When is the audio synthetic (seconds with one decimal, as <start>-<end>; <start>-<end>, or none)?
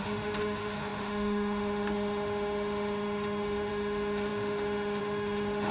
0.0-5.7